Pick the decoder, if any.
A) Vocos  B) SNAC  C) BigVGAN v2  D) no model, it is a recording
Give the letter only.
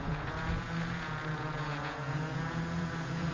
A